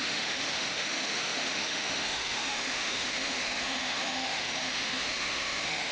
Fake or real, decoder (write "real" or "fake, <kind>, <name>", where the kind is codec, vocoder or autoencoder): fake, autoencoder, DAC-VAE